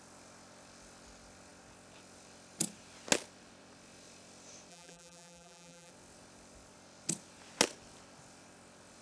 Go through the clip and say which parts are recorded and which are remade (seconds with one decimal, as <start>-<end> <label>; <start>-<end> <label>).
0.0-4.7 recorded; 4.7-5.9 remade; 5.9-9.0 recorded